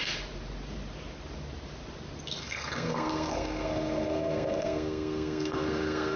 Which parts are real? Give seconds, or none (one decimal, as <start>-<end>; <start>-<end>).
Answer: 0.0-2.4